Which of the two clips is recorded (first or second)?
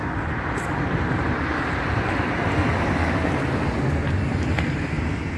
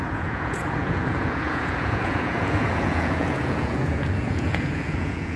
first